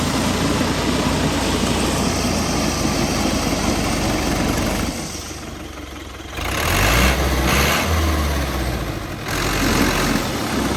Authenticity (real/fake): real